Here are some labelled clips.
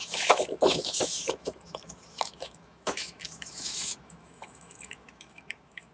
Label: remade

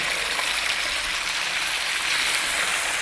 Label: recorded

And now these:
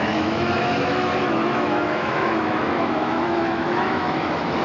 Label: remade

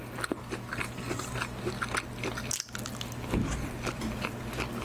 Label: recorded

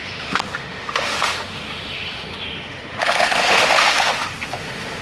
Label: remade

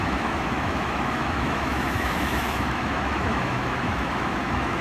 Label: remade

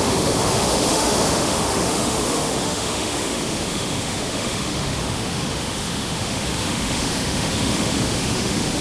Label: remade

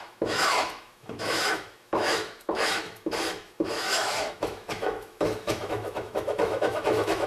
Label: remade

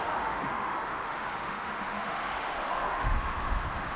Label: remade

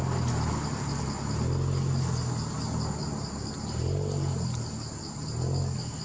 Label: recorded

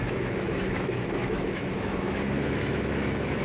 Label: remade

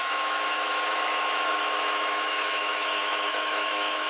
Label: remade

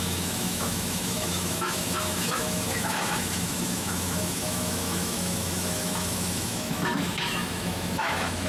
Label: remade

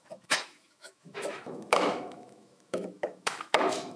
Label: remade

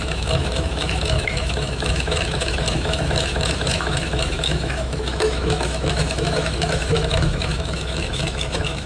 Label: remade